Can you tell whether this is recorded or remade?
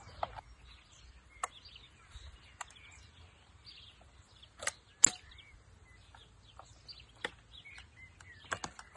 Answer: recorded